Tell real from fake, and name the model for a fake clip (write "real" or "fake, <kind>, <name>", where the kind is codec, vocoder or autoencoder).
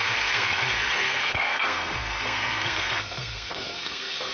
fake, codec, SNAC